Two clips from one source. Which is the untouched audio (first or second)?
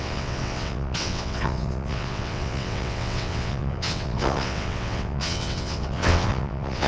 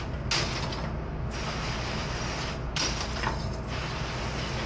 second